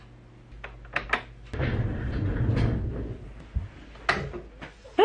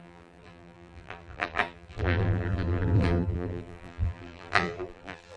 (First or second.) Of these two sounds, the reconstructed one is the second